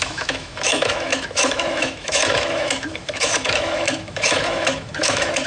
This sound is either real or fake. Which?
fake